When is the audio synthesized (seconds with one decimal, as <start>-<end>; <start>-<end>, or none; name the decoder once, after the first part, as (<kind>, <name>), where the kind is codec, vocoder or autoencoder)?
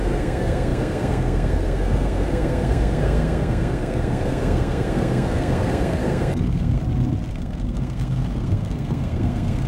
0.0-6.8 (codec, SNAC); 7.3-9.7